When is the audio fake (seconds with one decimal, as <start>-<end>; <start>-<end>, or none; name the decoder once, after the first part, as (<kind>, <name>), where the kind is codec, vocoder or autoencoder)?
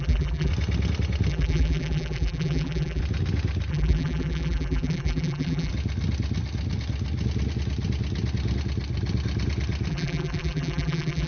0.0-0.5 (vocoder, BigVGAN v2); 1.3-3.0; 3.7-5.7; 9.9-11.3